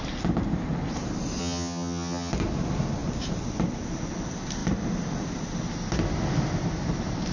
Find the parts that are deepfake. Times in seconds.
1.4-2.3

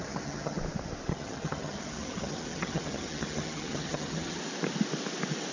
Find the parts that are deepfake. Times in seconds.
0.0-0.6; 1.1-4.4

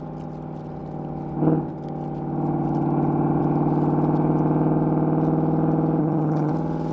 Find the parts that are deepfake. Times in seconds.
6.0-6.5

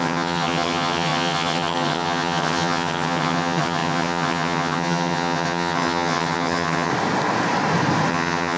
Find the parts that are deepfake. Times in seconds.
0.0-6.9; 8.1-8.6

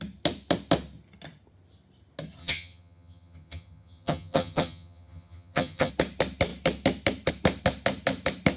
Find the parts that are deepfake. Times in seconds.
2.4-5.9